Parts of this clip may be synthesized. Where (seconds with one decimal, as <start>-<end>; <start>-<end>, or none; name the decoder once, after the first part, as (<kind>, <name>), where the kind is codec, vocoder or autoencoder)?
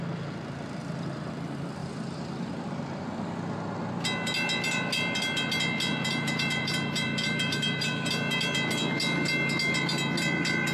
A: 0.8-1.3 (vocoder, BigVGAN v2); 1.8-2.8; 5.9-7.9